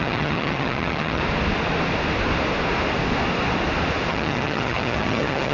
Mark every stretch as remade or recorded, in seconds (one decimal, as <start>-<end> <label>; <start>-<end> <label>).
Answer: 0.0-1.2 remade; 1.2-4.1 recorded; 4.1-5.5 remade